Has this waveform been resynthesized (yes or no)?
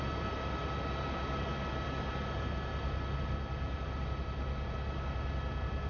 no